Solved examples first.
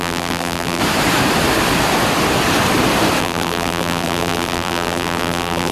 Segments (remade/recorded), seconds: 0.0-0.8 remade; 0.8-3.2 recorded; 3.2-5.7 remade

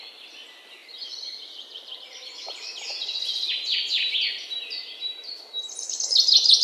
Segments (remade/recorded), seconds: 0.0-0.8 recorded; 0.8-2.7 remade; 2.7-4.8 recorded; 4.8-5.7 remade; 5.7-6.6 recorded